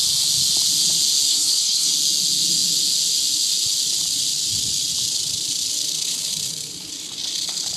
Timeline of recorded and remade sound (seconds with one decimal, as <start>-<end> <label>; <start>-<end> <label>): 0.0-1.3 recorded; 1.3-1.9 remade; 1.9-7.8 recorded